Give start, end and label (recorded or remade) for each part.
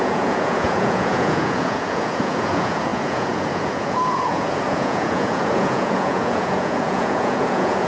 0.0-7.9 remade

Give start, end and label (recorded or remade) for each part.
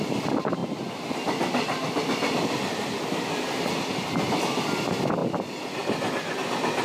0.0-6.8 recorded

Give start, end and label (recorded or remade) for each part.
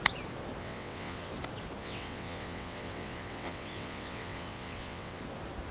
0.0-0.6 recorded; 0.6-1.3 remade; 1.3-1.8 recorded; 1.8-5.2 remade; 5.2-5.7 recorded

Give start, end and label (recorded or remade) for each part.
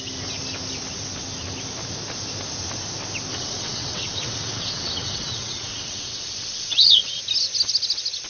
0.0-3.3 recorded; 3.3-7.2 remade; 7.2-8.3 recorded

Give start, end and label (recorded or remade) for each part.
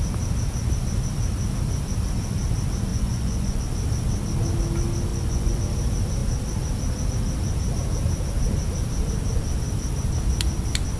0.0-2.9 recorded; 2.9-3.6 remade; 3.6-5.1 recorded; 5.1-5.6 remade; 5.6-11.0 recorded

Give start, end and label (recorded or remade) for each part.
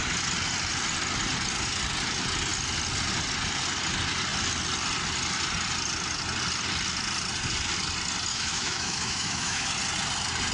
0.0-8.3 recorded; 8.3-9.7 remade; 9.7-10.5 recorded